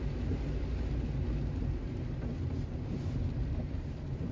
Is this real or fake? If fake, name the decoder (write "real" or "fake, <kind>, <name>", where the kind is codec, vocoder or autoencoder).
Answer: real